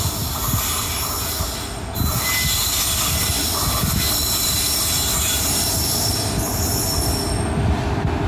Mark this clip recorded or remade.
recorded